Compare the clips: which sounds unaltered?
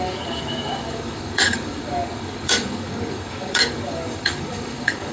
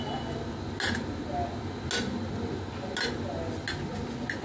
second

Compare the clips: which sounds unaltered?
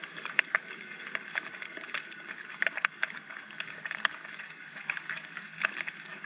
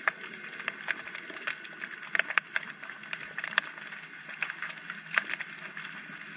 second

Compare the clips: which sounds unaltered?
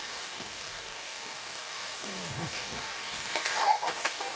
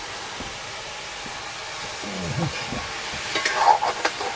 second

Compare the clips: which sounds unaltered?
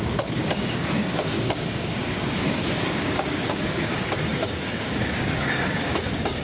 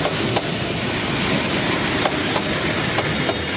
second